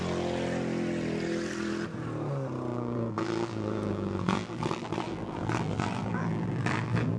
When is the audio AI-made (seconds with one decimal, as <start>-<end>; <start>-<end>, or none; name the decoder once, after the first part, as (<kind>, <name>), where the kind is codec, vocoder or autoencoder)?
2.7-7.2 (vocoder, BigVGAN v2)